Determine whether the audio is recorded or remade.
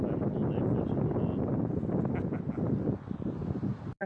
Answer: recorded